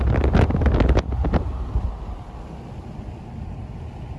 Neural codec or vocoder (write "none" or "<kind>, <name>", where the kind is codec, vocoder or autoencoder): none